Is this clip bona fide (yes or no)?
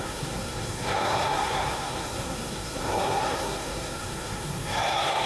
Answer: no